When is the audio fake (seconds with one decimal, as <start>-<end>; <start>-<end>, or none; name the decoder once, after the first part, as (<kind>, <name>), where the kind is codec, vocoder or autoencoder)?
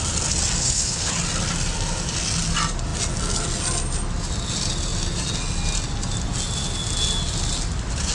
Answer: 0.6-1.1 (codec, HILCodec)